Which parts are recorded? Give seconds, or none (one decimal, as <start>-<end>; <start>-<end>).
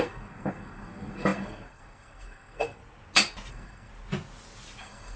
2.8-3.5; 3.9-4.8